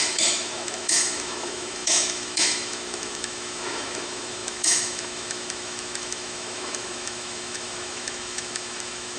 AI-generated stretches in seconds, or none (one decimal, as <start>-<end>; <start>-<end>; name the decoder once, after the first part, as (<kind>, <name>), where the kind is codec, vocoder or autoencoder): 0.0-9.2 (autoencoder, DAC-VAE)